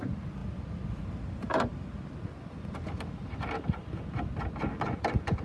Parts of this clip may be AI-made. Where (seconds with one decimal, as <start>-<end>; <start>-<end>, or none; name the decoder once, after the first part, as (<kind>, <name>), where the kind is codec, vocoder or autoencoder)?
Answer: none